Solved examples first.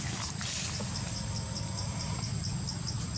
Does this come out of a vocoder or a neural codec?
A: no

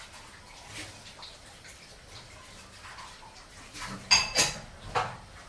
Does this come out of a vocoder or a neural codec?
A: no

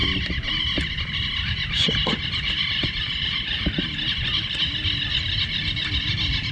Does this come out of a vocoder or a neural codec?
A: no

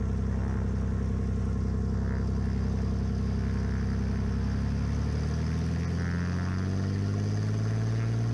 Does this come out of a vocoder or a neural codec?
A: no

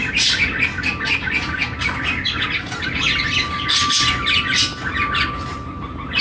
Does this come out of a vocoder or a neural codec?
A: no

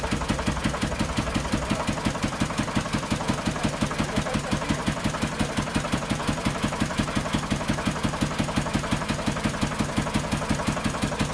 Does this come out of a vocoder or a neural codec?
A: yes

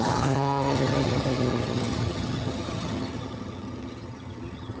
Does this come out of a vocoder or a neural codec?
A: yes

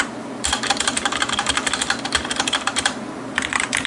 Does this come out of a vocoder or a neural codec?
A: yes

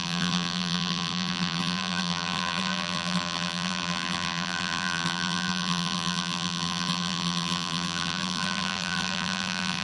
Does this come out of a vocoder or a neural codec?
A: yes